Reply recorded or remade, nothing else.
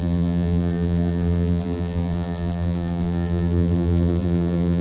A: remade